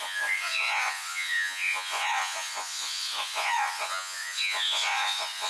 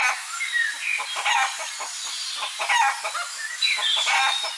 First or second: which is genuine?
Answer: second